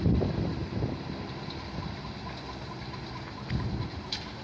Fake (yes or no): no